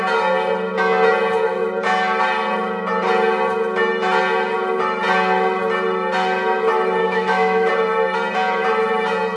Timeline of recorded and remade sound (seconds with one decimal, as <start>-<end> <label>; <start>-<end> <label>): 0.0-7.0 recorded; 7.0-7.7 remade; 7.7-9.4 recorded